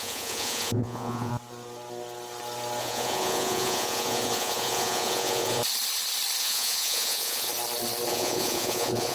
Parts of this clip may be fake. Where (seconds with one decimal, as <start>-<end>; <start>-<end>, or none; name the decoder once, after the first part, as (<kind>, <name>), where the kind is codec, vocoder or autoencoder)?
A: 0.0-1.3 (vocoder, Vocos); 2.8-5.6; 6.4-7.5; 8.1-9.1